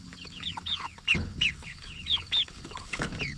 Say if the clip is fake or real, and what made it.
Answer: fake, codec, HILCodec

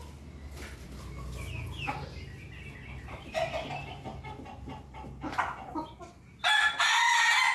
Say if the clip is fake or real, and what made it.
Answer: real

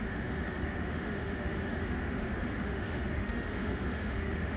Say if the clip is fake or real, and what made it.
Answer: fake, autoencoder, DAC-VAE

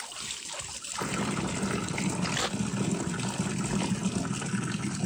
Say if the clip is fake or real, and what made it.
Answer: real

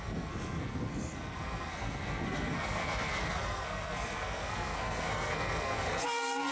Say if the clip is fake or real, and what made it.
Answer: fake, codec, SNAC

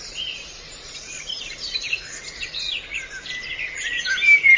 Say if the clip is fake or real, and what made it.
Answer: fake, vocoder, BigVGAN v2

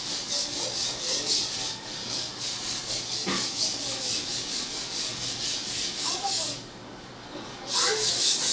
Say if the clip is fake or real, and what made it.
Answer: fake, codec, DAC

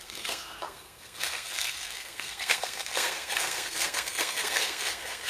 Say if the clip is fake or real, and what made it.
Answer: fake, codec, SNAC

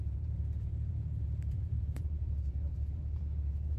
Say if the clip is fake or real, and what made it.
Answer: fake, vocoder, BigVGAN v2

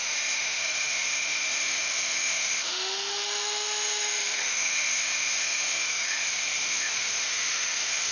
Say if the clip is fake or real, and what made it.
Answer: fake, autoencoder, DAC-VAE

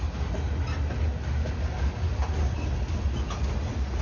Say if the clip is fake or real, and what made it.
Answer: real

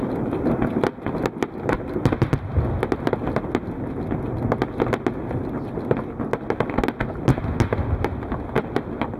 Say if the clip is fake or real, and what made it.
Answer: real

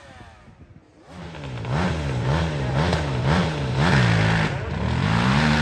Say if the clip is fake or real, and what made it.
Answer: real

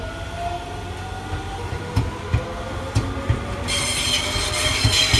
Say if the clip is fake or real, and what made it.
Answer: real